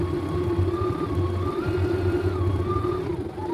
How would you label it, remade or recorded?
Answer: recorded